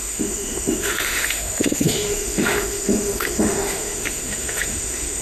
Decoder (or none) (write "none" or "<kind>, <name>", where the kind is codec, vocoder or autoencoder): autoencoder, DAC-VAE